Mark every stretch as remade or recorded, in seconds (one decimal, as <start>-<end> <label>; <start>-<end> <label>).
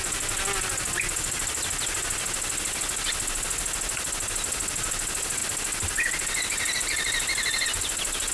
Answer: 0.0-8.3 recorded